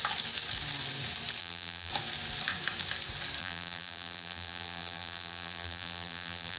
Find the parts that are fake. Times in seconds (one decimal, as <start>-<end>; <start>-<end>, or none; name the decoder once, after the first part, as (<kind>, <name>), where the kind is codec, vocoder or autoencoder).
1.4-1.9 (vocoder, BigVGAN v2); 3.4-6.6